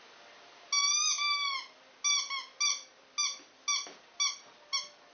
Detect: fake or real real